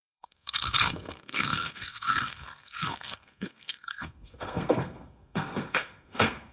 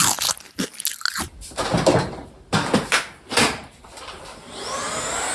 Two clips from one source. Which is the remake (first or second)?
first